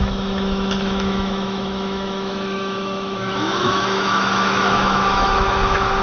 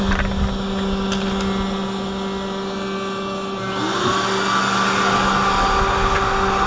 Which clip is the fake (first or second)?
first